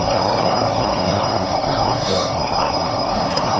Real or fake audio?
fake